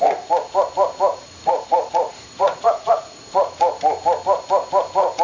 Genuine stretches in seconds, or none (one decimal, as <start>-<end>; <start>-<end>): 0.0-1.1; 3.8-5.2